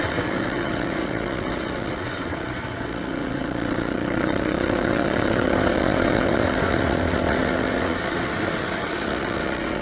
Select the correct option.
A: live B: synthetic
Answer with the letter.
B